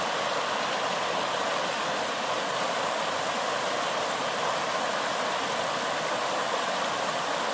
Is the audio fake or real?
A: fake